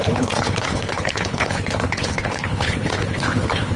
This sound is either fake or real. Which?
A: fake